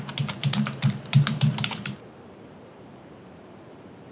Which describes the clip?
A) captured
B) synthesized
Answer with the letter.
B